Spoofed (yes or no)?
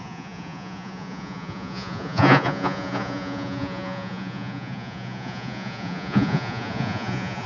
yes